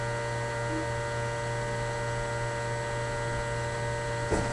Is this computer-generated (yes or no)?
no